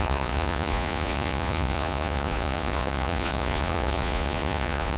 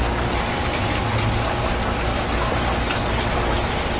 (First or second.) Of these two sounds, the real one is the second